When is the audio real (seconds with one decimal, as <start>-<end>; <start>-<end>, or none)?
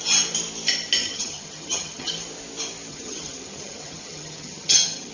0.0-1.0; 2.1-2.9